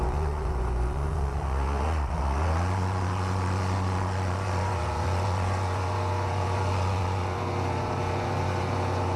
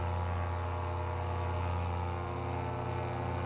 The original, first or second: second